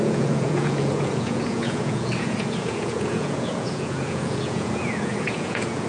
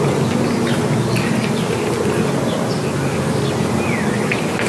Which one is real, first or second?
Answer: second